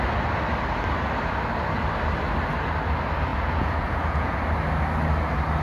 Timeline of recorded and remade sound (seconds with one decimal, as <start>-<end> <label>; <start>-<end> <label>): 0.0-3.3 recorded; 3.3-4.4 remade; 4.4-5.6 recorded